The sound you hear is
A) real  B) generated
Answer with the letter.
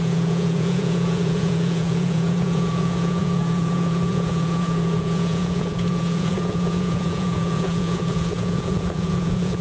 B